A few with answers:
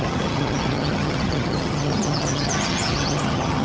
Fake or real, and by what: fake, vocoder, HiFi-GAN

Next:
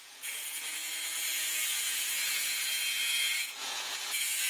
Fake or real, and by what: fake, vocoder, Vocos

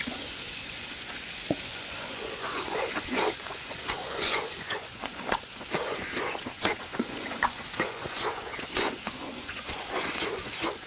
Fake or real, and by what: fake, vocoder, Vocos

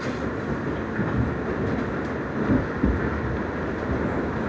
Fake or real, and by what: real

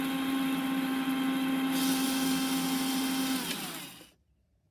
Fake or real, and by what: real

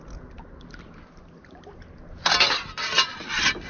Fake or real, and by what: real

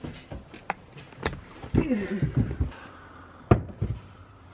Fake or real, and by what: real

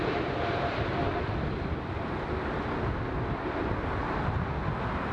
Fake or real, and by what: real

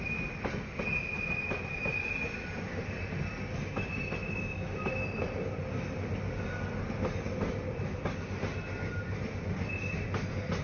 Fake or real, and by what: real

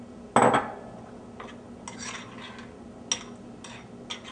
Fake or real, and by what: real